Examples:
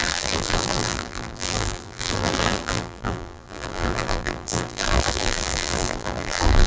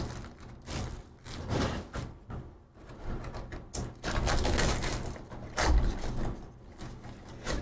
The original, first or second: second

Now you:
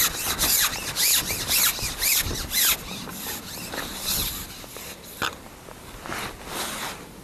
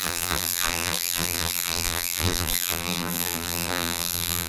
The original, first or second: first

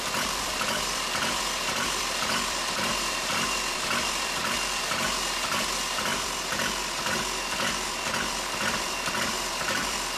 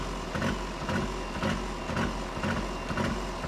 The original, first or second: second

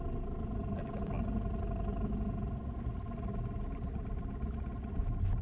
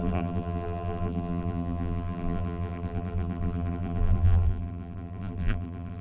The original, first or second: first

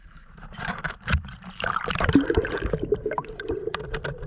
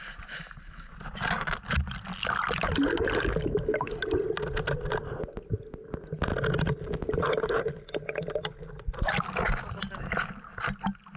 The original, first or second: second